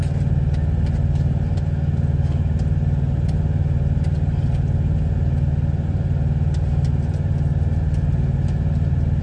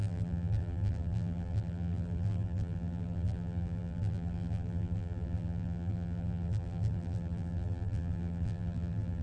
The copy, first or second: second